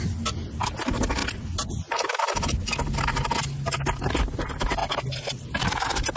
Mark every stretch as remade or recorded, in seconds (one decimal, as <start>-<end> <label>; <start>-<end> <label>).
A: 0.0-6.2 recorded